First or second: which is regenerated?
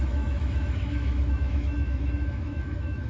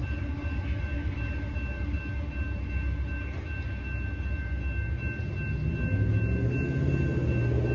first